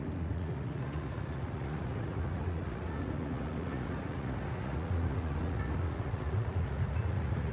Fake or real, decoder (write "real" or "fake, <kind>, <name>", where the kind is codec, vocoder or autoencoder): fake, vocoder, Vocos